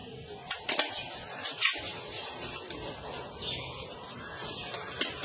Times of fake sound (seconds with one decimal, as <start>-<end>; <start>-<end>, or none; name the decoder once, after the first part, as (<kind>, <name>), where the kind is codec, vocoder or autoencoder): none